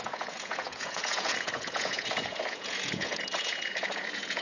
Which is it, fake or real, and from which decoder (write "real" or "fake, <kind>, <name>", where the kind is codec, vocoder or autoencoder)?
fake, vocoder, Vocos